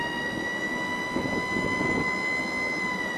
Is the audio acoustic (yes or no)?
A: yes